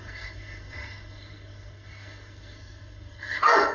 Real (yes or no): no